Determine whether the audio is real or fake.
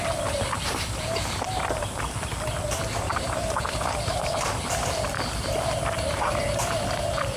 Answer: fake